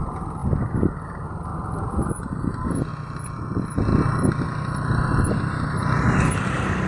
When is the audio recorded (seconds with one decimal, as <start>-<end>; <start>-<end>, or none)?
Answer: 0.0-6.9